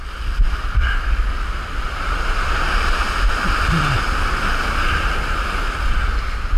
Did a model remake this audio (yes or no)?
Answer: no